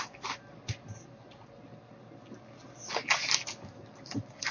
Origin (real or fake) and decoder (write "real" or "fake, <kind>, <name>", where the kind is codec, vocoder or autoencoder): real